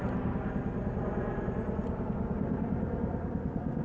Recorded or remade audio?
recorded